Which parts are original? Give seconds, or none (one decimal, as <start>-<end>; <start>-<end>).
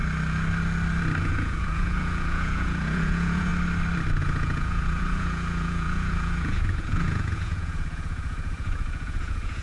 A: 0.0-1.2; 3.5-4.2